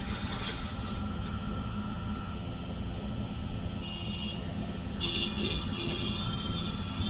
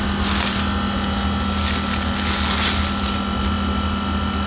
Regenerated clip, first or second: first